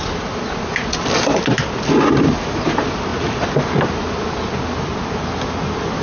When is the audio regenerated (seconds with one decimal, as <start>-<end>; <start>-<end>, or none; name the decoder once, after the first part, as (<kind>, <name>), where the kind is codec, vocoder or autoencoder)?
none